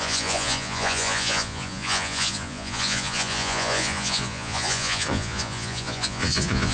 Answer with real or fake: fake